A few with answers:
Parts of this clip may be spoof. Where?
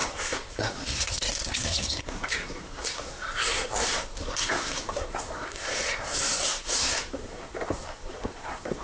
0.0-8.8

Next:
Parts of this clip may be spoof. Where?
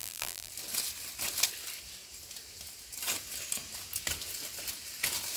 0.0-0.5